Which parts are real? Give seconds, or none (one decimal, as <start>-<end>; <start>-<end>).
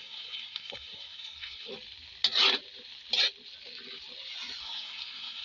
1.7-4.6